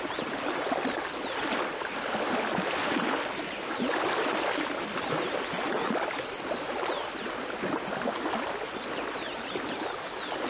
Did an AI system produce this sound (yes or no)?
no